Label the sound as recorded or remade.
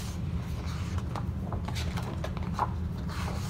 recorded